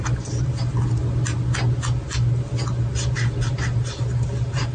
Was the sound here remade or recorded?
recorded